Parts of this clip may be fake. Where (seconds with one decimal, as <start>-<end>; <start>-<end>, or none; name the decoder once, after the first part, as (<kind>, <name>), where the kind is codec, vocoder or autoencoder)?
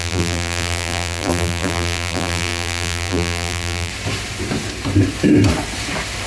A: 0.0-3.9 (vocoder, BigVGAN v2)